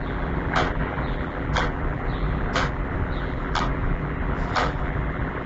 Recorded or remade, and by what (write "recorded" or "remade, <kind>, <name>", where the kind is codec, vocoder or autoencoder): remade, vocoder, BigVGAN v2